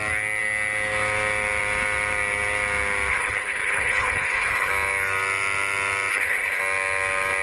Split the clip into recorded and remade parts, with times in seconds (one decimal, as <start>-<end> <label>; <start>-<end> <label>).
0.0-3.1 recorded; 3.1-4.7 remade; 4.7-6.1 recorded; 6.1-6.6 remade; 6.6-7.4 recorded